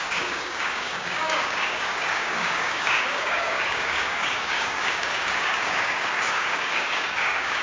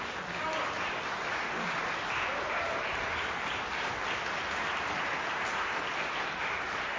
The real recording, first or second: second